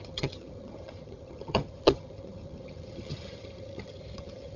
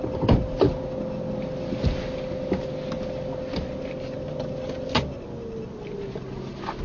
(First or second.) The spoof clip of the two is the first